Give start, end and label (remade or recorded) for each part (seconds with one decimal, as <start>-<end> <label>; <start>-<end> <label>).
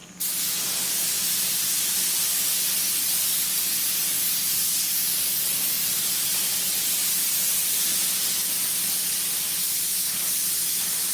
0.0-11.1 recorded